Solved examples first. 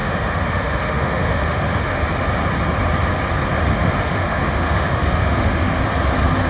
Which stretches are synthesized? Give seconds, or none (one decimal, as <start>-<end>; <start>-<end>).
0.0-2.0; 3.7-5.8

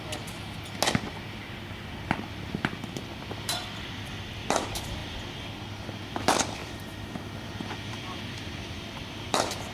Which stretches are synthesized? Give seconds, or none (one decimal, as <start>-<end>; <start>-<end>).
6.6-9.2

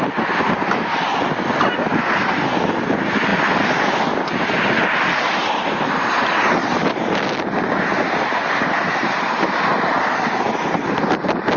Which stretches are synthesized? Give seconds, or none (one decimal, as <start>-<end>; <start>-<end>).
none

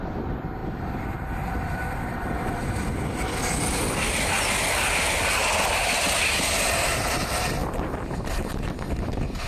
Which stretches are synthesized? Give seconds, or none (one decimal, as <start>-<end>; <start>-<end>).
0.6-3.3

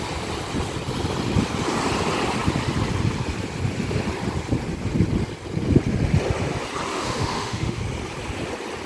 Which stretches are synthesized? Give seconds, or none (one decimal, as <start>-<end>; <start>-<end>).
6.9-7.8

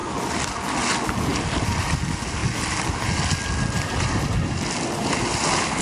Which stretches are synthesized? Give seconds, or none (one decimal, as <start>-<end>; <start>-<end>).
none